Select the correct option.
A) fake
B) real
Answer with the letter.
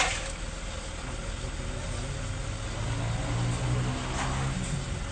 B